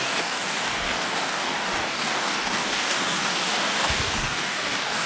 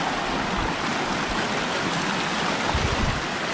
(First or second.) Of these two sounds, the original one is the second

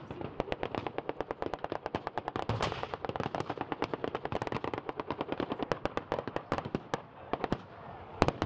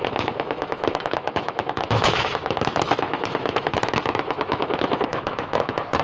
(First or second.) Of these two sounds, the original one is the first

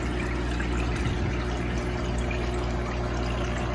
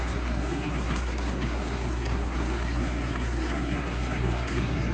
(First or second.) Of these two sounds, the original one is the first